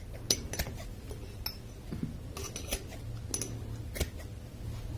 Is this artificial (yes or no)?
no